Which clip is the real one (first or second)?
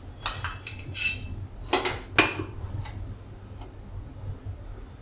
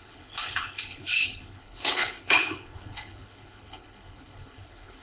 first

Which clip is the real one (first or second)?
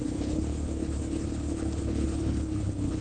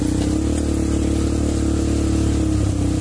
second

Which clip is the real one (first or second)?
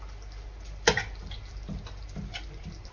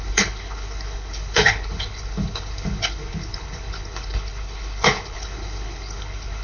first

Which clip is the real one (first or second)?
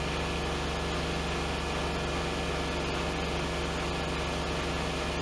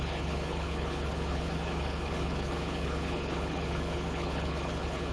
first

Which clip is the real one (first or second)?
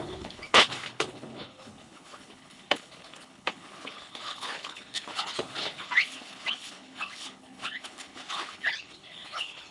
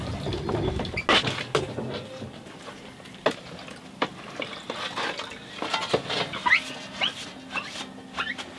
second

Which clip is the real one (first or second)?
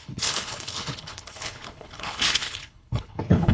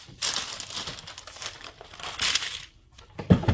second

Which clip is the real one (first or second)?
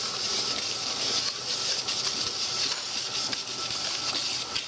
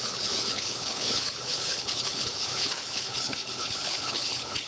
first